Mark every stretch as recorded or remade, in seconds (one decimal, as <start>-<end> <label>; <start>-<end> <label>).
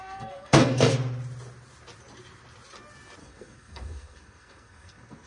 0.0-0.9 remade; 0.9-3.2 recorded; 3.2-5.3 remade